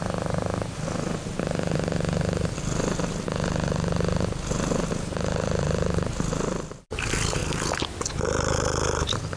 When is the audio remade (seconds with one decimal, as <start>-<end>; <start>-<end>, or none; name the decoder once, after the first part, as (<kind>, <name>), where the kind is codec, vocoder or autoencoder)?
none